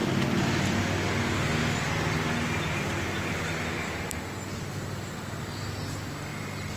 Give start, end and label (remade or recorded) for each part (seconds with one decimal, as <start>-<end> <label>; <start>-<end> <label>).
0.0-6.8 recorded